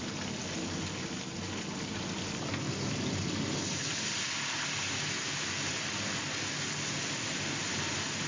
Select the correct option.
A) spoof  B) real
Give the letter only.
B